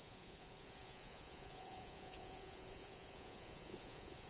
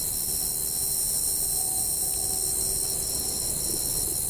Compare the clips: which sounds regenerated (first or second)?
first